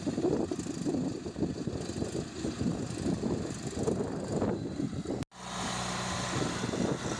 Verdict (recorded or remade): recorded